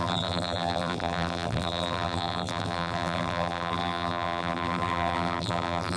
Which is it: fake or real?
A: fake